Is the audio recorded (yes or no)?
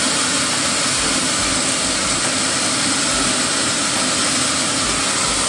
yes